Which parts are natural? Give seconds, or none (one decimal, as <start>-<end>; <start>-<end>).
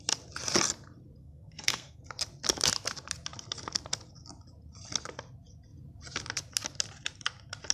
0.0-1.2; 2.0-7.7